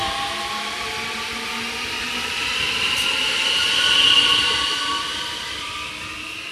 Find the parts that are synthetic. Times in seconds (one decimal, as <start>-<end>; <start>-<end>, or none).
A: 2.0-5.9